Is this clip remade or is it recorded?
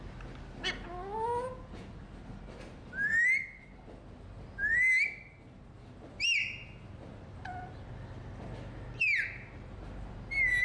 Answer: recorded